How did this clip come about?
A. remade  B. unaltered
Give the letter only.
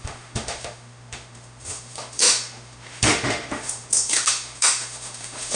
A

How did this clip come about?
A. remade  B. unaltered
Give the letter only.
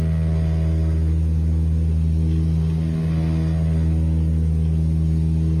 B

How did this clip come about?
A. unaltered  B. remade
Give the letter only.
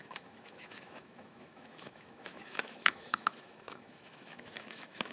B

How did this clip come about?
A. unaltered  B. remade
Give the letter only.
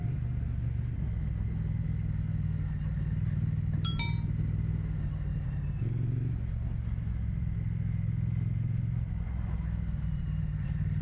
A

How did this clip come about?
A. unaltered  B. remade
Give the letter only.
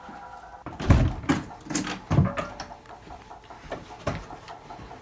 A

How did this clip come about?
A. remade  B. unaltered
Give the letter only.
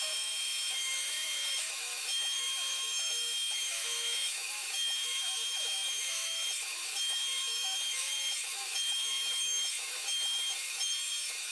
A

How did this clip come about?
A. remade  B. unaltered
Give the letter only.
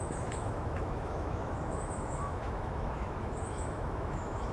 A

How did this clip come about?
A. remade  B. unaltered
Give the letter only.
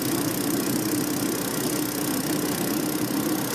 B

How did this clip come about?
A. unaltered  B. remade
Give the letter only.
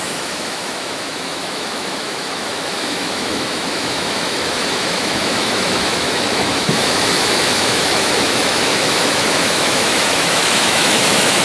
B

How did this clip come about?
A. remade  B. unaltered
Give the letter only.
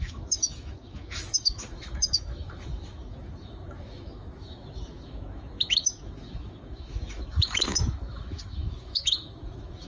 A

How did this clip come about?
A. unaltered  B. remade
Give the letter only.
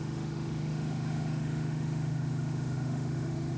B